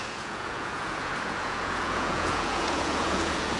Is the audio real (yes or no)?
no